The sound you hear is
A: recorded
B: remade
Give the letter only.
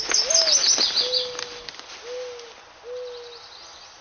A